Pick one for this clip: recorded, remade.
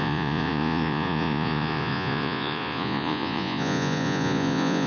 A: remade